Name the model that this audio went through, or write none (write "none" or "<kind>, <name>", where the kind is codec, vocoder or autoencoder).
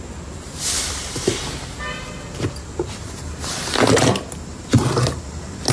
none